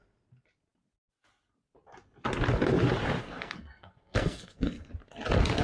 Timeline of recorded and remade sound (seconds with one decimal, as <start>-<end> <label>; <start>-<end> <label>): 0.0-3.2 recorded; 3.2-4.9 remade; 4.9-5.6 recorded